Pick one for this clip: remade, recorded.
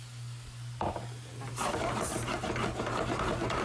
recorded